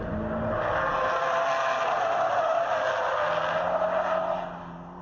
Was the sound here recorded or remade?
recorded